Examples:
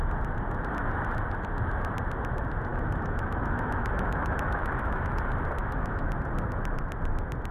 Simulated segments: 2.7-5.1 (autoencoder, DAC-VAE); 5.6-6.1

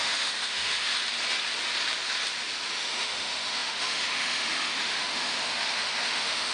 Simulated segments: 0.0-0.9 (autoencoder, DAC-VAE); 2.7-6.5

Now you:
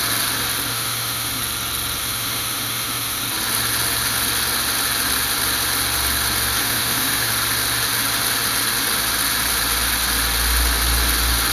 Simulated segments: 0.7-1.4 (autoencoder, DAC-VAE); 2.0-3.2; 6.6-7.3